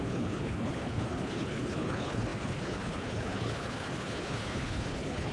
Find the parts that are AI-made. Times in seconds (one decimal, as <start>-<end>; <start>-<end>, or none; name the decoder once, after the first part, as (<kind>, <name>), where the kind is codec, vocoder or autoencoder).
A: 0.0-5.3 (codec, HILCodec)